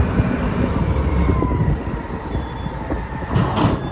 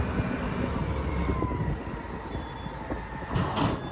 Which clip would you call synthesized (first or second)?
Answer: first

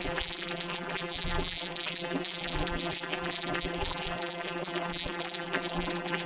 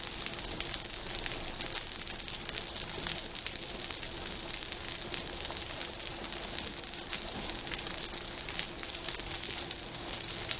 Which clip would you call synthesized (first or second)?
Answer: first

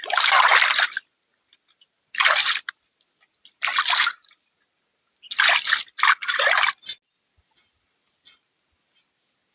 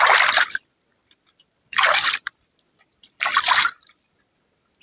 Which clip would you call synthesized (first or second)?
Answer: second